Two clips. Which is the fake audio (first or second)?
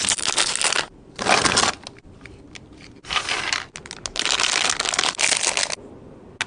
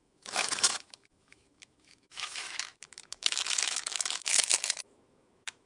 second